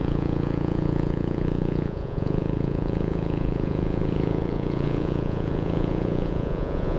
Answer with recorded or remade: remade